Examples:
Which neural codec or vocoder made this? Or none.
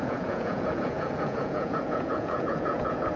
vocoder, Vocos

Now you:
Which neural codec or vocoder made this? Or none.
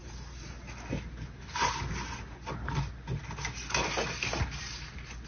none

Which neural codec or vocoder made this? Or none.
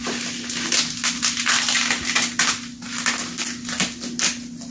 none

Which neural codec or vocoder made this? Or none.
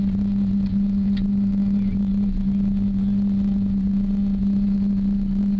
none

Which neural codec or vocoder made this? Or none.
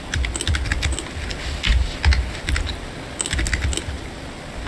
none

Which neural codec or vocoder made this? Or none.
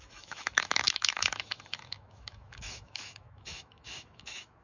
autoencoder, DAC-VAE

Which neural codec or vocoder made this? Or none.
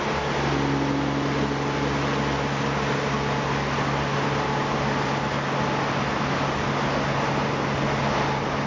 none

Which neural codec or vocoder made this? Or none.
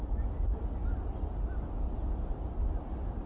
none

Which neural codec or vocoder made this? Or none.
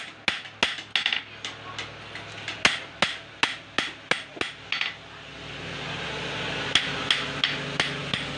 none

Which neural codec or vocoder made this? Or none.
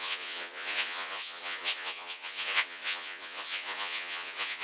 vocoder, Vocos